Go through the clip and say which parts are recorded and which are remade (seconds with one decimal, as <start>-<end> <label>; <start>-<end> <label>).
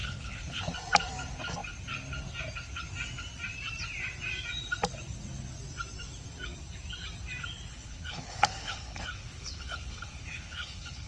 0.0-0.6 remade; 0.6-7.7 recorded; 7.7-11.1 remade